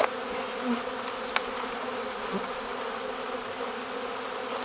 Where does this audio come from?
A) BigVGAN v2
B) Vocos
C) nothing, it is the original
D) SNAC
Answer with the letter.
C